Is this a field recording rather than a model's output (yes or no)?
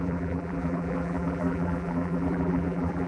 no